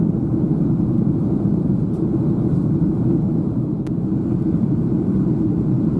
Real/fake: fake